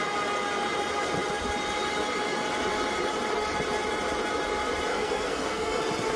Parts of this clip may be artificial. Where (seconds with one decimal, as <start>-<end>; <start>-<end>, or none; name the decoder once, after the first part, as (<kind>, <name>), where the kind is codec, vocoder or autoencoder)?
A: 4.9-5.8 (codec, SNAC)